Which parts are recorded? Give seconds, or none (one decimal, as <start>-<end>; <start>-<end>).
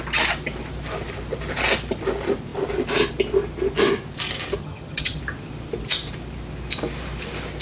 0.0-4.6; 5.2-7.6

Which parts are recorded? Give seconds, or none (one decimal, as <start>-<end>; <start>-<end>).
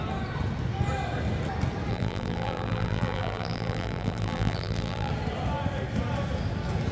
0.0-1.9; 5.1-6.9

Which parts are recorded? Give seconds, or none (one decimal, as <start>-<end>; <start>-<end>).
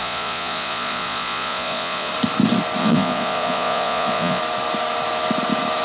2.1-2.8; 4.4-5.8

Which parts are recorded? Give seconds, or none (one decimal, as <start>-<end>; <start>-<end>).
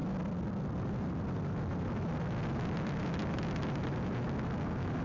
0.0-5.0